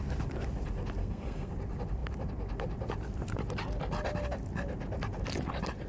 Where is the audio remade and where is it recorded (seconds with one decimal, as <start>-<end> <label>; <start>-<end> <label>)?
0.0-1.0 recorded; 1.0-1.5 remade; 1.5-5.9 recorded